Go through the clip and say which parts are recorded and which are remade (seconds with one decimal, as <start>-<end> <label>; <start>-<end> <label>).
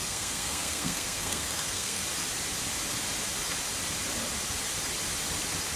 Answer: 0.0-2.0 remade; 2.0-5.8 recorded